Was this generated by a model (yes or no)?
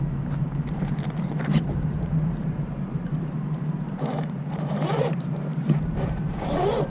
yes